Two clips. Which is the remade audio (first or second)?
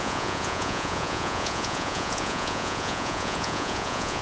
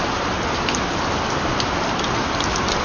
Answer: first